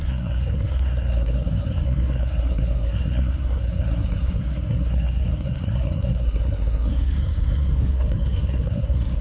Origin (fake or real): fake